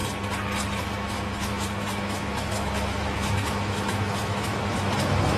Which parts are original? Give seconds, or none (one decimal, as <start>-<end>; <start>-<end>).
0.0-0.8